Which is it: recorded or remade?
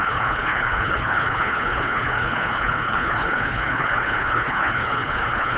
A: remade